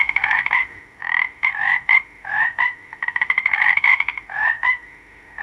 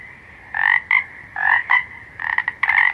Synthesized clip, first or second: first